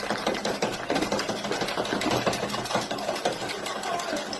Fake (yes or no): no